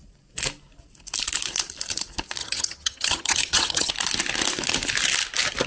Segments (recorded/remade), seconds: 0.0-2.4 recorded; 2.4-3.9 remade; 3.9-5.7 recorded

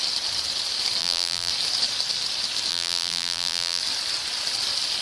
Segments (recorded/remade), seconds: 0.0-1.0 recorded; 1.0-1.5 remade; 1.5-2.7 recorded; 2.7-3.8 remade; 3.8-5.0 recorded

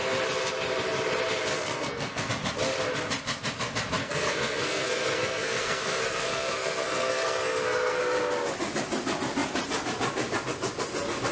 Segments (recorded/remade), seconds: 0.0-1.5 recorded; 1.5-2.3 remade; 2.3-4.0 recorded; 4.0-8.0 remade; 8.0-11.3 recorded

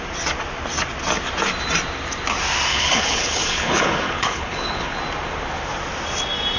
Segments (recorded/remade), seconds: 0.0-2.7 recorded; 2.7-5.0 remade; 5.0-6.6 recorded

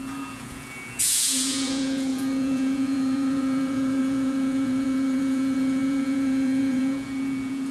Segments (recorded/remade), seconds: 0.0-7.7 remade

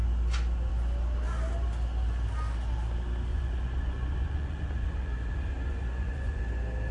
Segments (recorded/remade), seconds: 0.0-3.3 recorded; 3.3-6.4 remade; 6.4-6.9 recorded

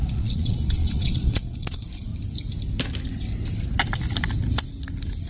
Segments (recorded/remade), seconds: 0.0-2.1 remade; 2.1-5.3 recorded

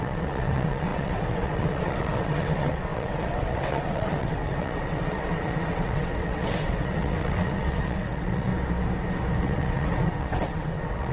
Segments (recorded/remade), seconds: 0.0-8.5 remade; 8.5-9.4 recorded; 9.4-11.1 remade